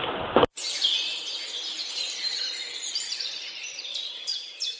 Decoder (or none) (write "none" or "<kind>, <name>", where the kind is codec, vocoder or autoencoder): vocoder, BigVGAN v2